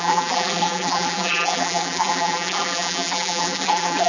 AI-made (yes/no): yes